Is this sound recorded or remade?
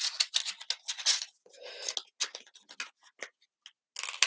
recorded